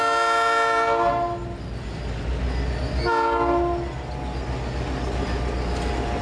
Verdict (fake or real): real